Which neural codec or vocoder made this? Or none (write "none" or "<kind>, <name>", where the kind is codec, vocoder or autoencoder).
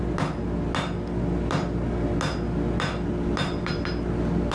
none